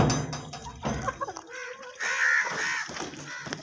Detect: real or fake real